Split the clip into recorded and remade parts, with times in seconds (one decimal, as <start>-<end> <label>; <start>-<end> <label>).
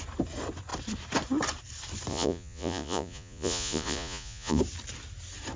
0.0-2.1 recorded; 2.1-4.6 remade; 4.6-5.6 recorded